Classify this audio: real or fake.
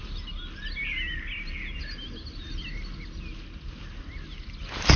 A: real